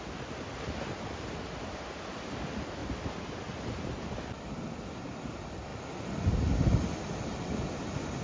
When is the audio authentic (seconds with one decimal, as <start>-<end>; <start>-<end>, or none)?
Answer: 2.8-3.6